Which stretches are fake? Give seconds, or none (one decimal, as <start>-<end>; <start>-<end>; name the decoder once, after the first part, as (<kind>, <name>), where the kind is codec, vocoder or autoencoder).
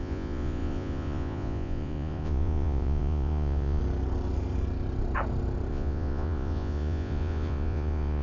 0.0-3.8 (vocoder, Vocos); 5.7-8.2